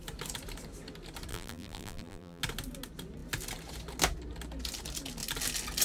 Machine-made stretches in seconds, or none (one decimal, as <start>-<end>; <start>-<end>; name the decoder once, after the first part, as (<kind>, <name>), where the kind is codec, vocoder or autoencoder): 1.3-2.4 (vocoder, BigVGAN v2)